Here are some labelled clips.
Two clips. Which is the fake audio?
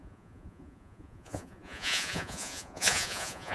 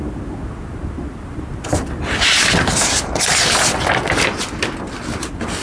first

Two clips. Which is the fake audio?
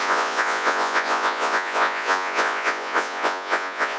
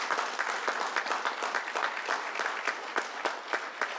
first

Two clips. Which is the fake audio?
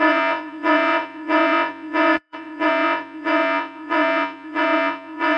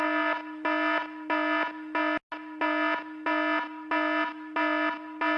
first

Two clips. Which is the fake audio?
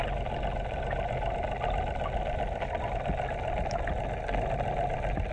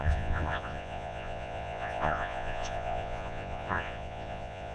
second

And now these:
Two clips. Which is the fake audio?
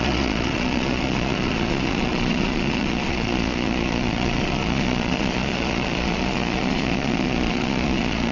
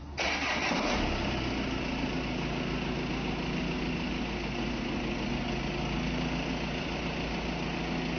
first